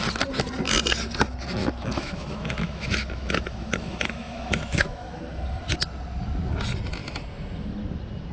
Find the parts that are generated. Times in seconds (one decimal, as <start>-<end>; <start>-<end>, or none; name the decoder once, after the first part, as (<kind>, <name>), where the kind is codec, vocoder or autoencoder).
1.6-5.2 (autoencoder, DAC-VAE)